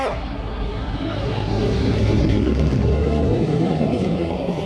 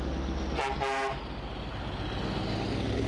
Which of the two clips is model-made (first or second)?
first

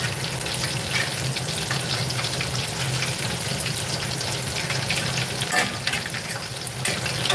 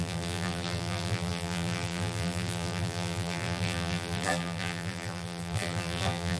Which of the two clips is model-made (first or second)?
second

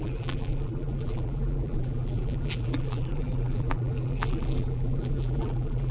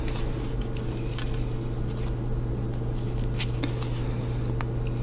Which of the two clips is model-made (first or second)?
first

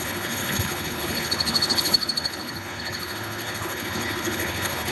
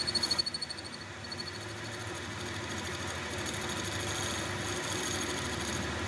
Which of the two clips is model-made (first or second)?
first